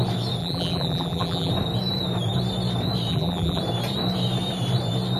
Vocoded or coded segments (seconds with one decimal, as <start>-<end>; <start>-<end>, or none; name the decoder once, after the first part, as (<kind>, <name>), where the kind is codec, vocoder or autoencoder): 0.4-1.5 (vocoder, BigVGAN v2); 3.1-3.6